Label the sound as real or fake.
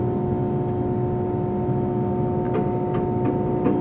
real